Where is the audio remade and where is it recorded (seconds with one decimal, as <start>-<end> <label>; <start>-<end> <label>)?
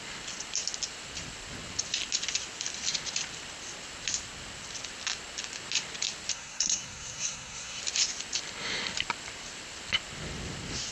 0.0-6.3 recorded; 6.3-7.8 remade; 7.8-10.9 recorded